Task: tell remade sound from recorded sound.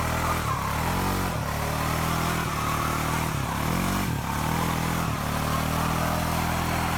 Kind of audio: recorded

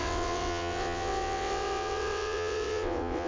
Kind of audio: remade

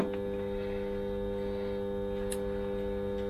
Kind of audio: recorded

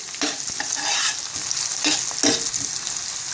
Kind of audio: recorded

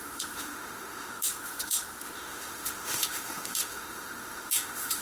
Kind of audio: remade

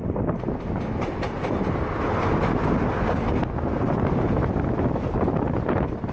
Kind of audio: recorded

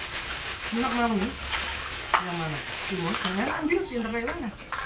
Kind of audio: remade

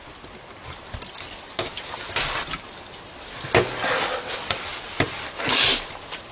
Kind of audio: recorded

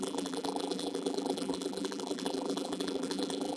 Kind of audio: remade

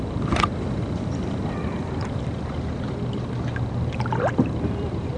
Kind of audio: remade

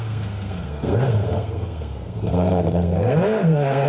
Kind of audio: remade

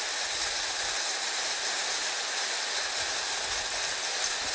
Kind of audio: recorded